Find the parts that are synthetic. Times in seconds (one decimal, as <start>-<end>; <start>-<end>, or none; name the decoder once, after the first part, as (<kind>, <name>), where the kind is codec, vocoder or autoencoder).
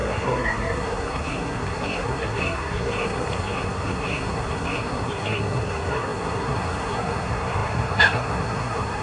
0.0-9.0 (codec, SNAC)